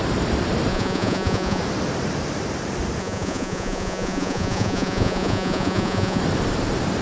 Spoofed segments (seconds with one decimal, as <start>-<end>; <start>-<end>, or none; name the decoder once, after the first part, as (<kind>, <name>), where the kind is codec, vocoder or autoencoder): 0.7-1.6 (vocoder, Vocos); 3.0-6.2